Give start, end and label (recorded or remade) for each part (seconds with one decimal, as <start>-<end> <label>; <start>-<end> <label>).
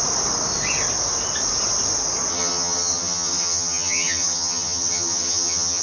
0.0-2.3 recorded; 2.3-5.8 remade